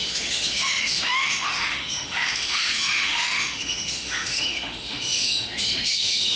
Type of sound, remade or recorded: remade